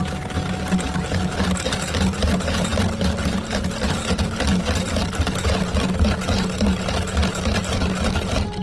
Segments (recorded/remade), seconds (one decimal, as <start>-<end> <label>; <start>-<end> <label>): 0.0-8.6 recorded